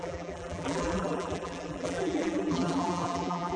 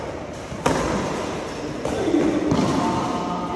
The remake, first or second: first